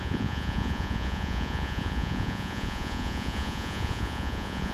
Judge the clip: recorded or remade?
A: remade